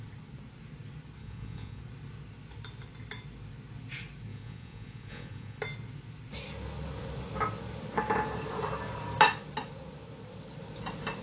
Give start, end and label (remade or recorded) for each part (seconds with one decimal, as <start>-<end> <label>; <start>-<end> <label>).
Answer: 0.0-1.2 recorded; 1.2-1.8 remade; 1.8-4.3 recorded; 4.3-5.6 remade; 5.6-11.2 recorded